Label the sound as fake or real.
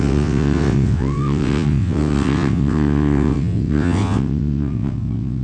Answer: fake